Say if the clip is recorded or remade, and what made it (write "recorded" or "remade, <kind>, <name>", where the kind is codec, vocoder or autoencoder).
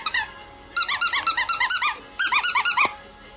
recorded